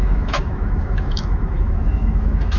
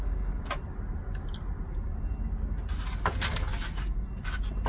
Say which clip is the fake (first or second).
first